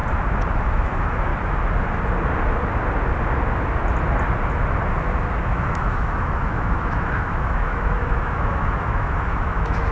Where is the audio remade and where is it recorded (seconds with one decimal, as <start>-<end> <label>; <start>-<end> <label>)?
0.0-0.5 recorded; 0.5-1.3 remade; 1.3-5.4 recorded; 5.4-9.9 remade